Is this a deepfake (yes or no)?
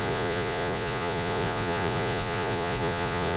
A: yes